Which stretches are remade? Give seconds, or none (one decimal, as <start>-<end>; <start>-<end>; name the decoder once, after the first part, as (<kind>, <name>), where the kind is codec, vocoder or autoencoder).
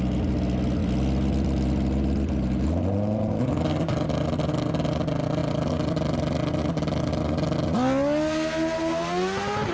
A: none